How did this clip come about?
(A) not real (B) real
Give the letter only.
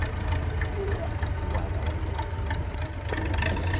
B